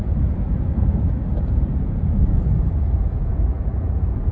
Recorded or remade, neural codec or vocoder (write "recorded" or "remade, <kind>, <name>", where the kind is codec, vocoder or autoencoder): remade, vocoder, Vocos